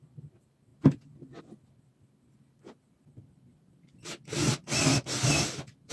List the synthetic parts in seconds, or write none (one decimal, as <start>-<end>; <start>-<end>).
none